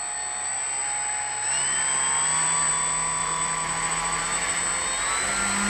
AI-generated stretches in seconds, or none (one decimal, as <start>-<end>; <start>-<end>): 3.2-4.6